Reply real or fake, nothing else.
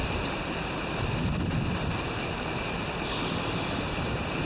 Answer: real